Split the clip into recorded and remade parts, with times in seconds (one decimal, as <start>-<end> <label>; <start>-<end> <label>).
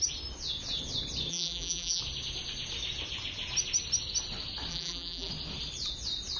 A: 0.0-1.3 recorded; 1.3-2.0 remade; 2.0-4.7 recorded; 4.7-5.3 remade; 5.3-6.4 recorded